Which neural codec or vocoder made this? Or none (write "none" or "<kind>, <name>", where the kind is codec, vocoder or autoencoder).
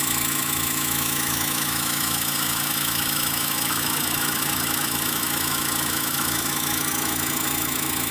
autoencoder, DAC-VAE